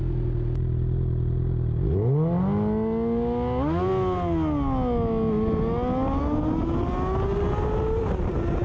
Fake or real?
real